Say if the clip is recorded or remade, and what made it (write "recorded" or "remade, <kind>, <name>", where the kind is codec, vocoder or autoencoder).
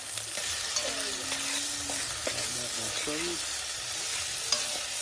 recorded